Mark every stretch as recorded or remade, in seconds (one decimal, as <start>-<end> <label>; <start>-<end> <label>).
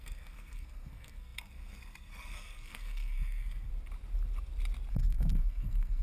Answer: 0.0-3.7 remade; 3.7-4.9 recorded; 4.9-6.0 remade